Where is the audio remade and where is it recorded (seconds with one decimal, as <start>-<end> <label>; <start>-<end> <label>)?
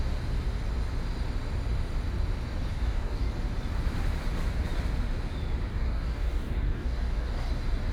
0.0-2.7 recorded; 2.7-3.3 remade; 3.3-5.7 recorded; 5.7-7.5 remade; 7.5-7.9 recorded